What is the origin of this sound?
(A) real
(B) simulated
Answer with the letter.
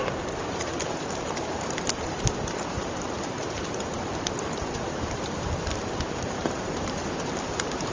B